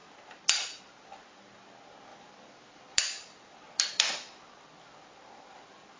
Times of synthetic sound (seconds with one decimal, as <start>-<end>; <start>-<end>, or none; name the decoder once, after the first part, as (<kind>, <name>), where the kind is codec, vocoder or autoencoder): 2.1-6.0 (vocoder, BigVGAN v2)